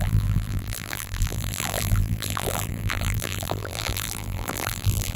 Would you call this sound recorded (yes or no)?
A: no